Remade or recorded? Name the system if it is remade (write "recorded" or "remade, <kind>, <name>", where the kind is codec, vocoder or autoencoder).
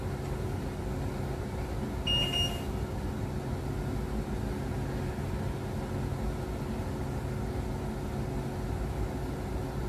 recorded